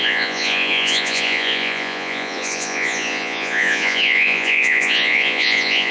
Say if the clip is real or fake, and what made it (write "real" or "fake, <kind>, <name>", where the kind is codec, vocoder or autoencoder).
fake, vocoder, Vocos